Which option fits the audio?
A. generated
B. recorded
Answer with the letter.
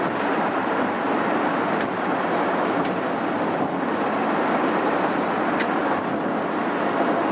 B